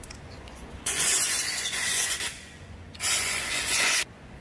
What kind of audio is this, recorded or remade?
remade